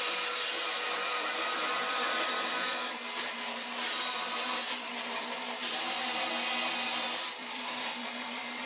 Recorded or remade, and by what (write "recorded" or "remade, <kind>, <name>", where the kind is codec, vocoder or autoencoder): remade, vocoder, BigVGAN v2